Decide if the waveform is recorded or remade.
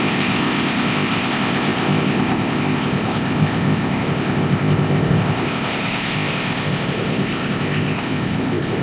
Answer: remade